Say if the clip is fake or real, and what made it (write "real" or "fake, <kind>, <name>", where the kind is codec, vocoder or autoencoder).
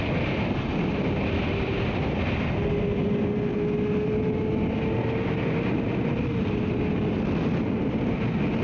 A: real